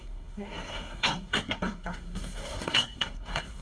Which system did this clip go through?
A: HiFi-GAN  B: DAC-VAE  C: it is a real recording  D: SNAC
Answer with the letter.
D